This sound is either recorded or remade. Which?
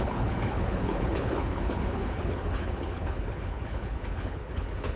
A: remade